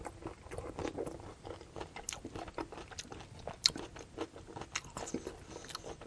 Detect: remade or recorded recorded